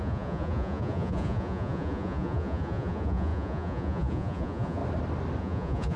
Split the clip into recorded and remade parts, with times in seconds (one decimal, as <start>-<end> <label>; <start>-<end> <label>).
0.0-4.8 remade; 4.8-5.4 recorded; 5.4-6.0 remade